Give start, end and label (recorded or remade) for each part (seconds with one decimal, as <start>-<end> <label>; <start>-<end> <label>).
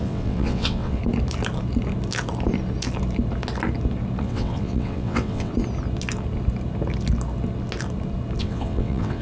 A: 0.0-1.0 remade; 1.0-4.2 recorded; 4.2-5.5 remade; 5.5-8.4 recorded; 8.4-9.2 remade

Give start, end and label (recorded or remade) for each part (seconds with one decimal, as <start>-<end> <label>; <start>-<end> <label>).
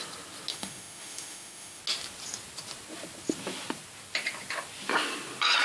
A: 0.0-0.5 recorded; 0.5-1.8 remade; 1.8-5.6 recorded